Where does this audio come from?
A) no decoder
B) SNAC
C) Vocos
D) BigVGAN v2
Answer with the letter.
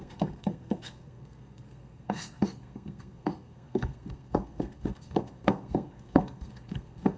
B